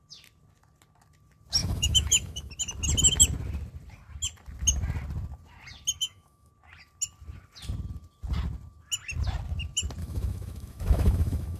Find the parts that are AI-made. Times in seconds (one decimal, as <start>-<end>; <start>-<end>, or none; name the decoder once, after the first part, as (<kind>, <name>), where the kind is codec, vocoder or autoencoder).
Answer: 1.6-2.5 (autoencoder, DAC-VAE); 6.0-6.5; 10.0-11.6